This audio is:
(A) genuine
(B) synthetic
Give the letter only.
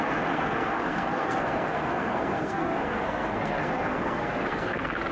B